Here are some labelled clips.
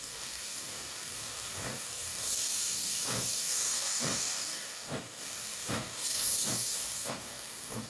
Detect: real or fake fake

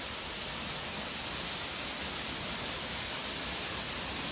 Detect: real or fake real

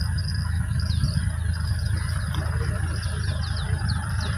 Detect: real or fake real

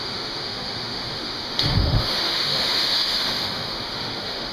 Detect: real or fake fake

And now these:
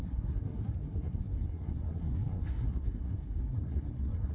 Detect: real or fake fake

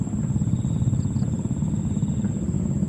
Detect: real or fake real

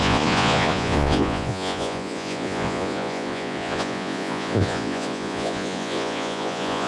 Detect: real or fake fake